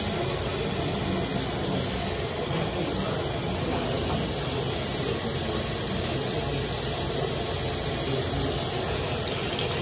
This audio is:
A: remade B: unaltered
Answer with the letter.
B